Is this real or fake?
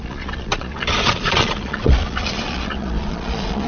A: fake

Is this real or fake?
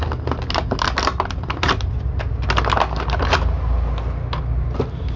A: real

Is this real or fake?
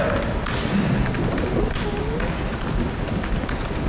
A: real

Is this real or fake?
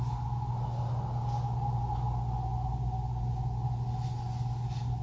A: real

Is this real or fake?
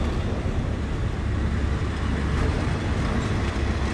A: real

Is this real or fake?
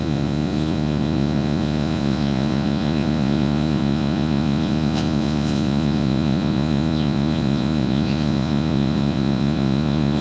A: fake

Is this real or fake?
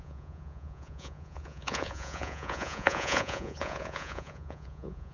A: fake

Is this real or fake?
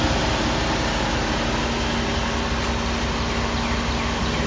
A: real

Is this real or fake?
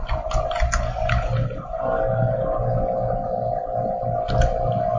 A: real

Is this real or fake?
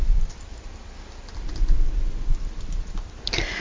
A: real